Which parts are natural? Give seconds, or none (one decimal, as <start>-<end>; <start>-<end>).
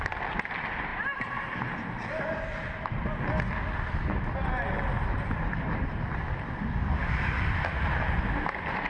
0.0-8.9